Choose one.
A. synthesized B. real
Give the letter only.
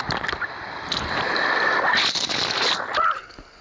B